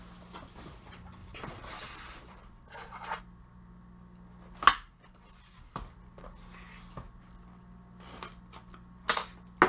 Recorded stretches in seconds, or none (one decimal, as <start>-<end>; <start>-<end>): 0.0-1.2; 3.2-4.7; 5.8-9.7